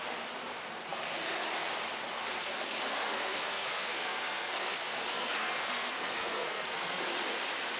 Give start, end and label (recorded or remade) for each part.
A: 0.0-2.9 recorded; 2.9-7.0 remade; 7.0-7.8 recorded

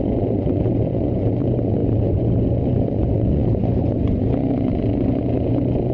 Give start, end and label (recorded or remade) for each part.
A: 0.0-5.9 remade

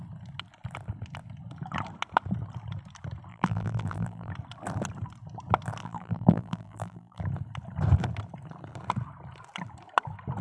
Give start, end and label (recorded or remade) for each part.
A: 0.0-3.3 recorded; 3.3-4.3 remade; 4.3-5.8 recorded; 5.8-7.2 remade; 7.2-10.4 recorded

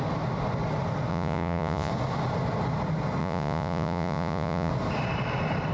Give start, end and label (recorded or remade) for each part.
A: 0.0-1.1 recorded; 1.1-1.9 remade; 1.9-3.2 recorded; 3.2-4.7 remade; 4.7-5.7 recorded